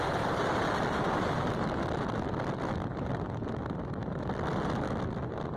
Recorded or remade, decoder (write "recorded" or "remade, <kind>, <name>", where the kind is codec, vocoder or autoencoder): recorded